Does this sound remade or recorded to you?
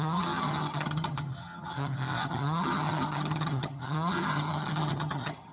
remade